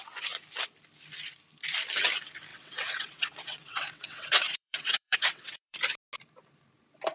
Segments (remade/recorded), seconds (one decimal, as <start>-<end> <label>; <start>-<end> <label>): 0.0-2.5 recorded; 2.5-5.8 remade; 5.8-7.1 recorded